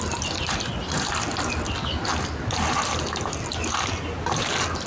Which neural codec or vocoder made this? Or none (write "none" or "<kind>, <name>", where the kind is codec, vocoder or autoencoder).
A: none